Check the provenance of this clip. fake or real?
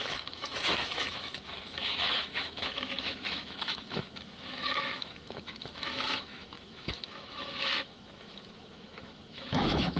fake